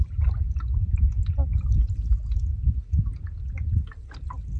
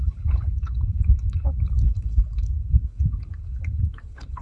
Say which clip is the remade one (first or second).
second